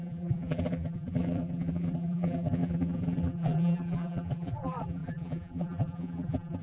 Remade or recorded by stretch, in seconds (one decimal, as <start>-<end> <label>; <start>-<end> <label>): 0.0-6.6 remade